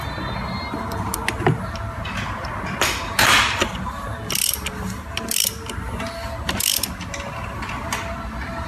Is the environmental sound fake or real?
real